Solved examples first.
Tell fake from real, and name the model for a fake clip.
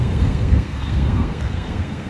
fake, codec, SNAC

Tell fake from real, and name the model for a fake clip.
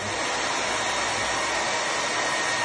real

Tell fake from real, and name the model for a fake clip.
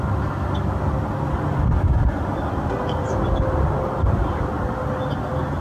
real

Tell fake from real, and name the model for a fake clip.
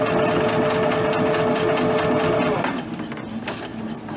real